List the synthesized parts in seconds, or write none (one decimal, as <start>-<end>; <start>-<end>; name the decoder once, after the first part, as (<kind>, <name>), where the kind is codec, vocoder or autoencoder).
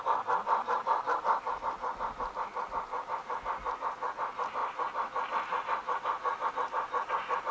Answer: none